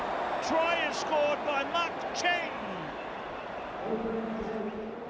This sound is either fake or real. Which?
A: real